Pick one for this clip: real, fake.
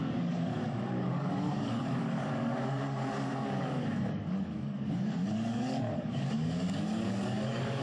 fake